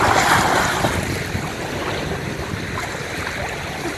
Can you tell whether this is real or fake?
real